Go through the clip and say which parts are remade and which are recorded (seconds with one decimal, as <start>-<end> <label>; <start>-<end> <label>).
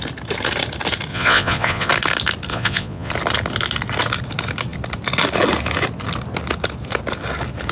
0.0-1.1 recorded; 1.1-1.9 remade; 1.9-2.5 recorded; 2.5-3.1 remade; 3.1-7.7 recorded